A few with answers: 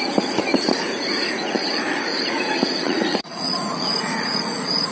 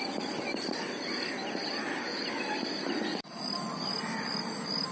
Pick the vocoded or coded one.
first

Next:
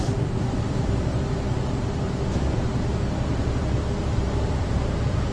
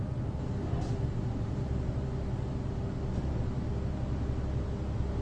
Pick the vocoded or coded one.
first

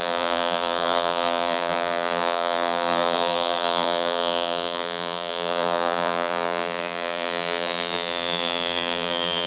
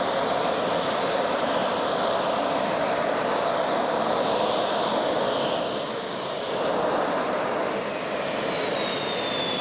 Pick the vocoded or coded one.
first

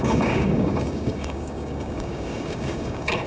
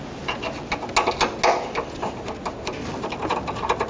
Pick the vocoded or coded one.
first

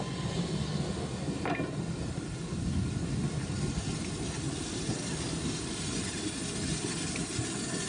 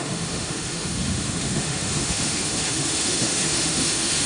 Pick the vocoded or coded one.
second